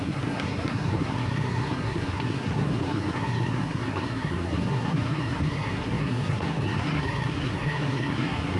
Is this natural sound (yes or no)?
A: no